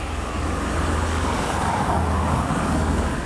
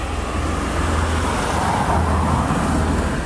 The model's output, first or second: first